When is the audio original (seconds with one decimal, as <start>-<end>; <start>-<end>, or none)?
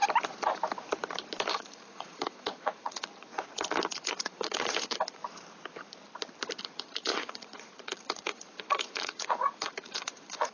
0.0-1.5; 3.3-3.9; 5.2-6.6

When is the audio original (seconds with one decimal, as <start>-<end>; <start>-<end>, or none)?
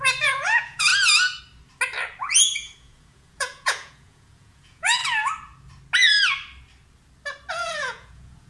0.9-2.2; 5.0-7.5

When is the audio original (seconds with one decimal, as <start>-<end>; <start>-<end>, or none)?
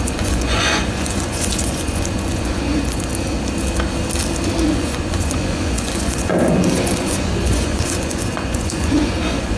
3.1-4.6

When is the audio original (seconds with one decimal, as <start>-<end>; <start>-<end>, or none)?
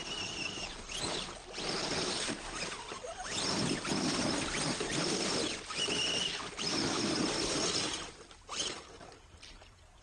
0.0-10.0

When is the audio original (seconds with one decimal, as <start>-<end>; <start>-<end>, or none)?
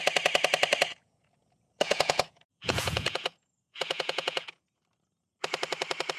0.0-0.9; 4.6-6.2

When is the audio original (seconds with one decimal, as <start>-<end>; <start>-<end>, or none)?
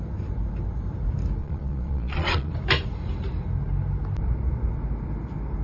0.0-1.4; 2.5-5.6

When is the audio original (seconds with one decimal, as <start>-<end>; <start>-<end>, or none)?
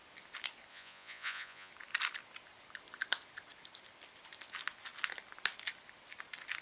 0.0-0.7; 1.7-6.6